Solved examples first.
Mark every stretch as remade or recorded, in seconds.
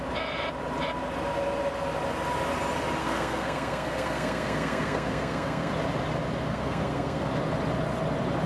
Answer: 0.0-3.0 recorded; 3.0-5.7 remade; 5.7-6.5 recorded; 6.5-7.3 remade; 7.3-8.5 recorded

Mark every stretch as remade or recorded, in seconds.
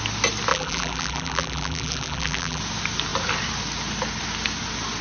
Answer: 0.0-0.5 recorded; 0.5-2.6 remade; 2.6-5.0 recorded